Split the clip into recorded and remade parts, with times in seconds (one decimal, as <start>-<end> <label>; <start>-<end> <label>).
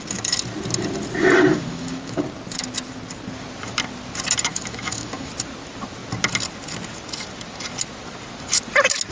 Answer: 0.0-1.5 recorded; 1.5-2.2 remade; 2.2-4.5 recorded; 4.5-5.3 remade; 5.3-9.1 recorded